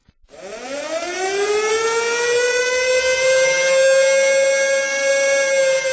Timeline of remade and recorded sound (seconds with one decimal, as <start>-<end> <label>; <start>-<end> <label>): 0.0-1.7 remade; 1.7-5.9 recorded